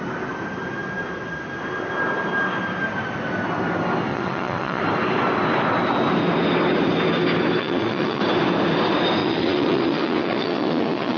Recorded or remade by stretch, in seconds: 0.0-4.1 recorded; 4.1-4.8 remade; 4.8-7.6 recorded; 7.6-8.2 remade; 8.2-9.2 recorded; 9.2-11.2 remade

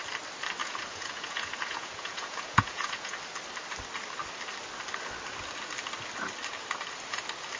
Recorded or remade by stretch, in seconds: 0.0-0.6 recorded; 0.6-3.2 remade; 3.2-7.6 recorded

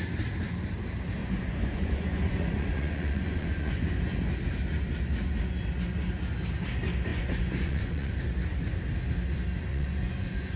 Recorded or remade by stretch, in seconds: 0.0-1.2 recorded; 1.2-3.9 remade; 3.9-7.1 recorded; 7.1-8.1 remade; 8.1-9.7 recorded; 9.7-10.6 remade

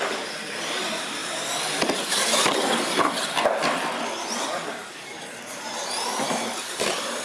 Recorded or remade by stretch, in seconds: 0.0-7.2 recorded

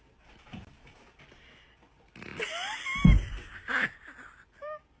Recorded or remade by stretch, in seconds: 0.0-5.0 recorded

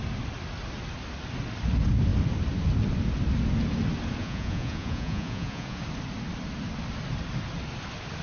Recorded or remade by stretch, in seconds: 0.0-4.2 recorded; 4.2-5.8 remade; 5.8-8.2 recorded

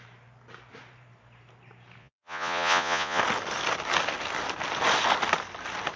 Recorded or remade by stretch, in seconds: 0.0-2.0 recorded; 2.0-3.2 remade; 3.2-6.0 recorded

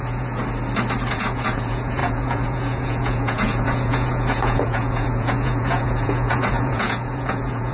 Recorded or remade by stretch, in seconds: 0.0-0.4 remade; 0.4-1.1 recorded; 1.1-7.7 remade